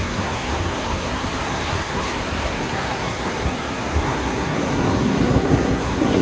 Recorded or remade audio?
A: remade